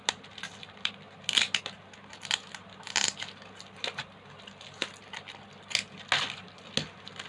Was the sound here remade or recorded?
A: recorded